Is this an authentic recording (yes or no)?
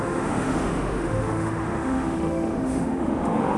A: no